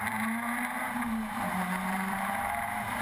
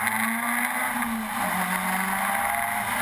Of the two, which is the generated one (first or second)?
first